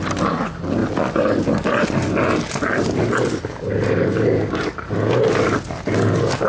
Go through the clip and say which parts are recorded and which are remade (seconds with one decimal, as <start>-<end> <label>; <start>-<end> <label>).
0.0-6.5 recorded